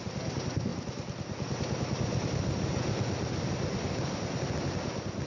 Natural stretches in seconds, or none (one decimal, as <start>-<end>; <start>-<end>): 0.0-5.3